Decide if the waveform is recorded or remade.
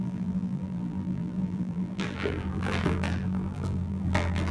remade